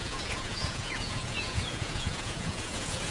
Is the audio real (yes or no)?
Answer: no